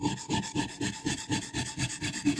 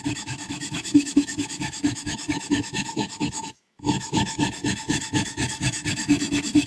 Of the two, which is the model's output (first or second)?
second